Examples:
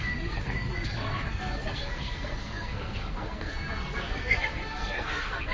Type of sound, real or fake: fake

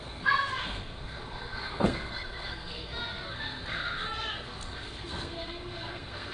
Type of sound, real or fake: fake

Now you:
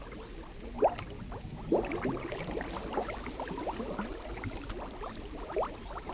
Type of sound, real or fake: real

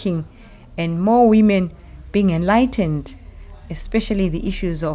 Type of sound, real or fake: real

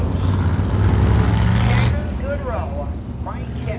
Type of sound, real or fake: real